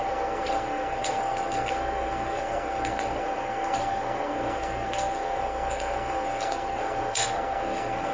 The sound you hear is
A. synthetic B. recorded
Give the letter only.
A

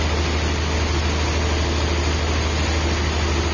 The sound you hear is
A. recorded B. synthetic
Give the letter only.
A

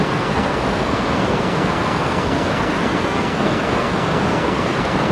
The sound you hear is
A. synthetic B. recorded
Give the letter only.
A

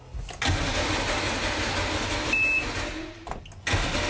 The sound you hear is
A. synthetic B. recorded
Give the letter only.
B